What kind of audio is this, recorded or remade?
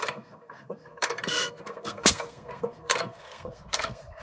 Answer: remade